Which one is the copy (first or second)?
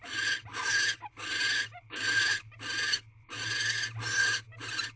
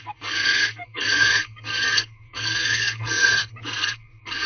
second